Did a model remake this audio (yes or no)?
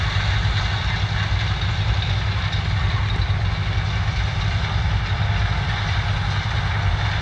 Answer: no